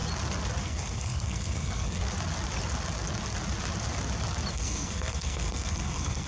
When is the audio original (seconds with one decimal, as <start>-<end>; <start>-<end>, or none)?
0.0-0.6; 2.0-4.5